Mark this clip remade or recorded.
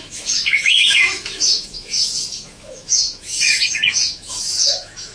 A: remade